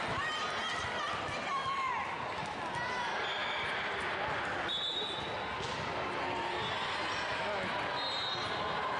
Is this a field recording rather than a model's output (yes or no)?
yes